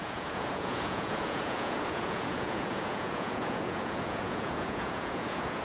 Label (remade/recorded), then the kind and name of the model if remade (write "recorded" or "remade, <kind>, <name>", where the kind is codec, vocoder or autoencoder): remade, vocoder, Vocos